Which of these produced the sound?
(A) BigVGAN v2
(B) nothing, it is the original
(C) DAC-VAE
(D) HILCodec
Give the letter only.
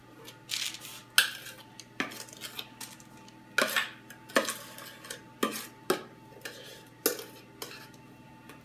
B